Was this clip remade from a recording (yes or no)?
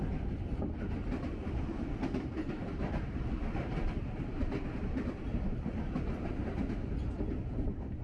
yes